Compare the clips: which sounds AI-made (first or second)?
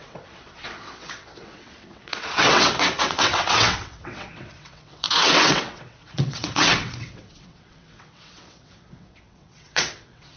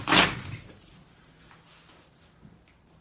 first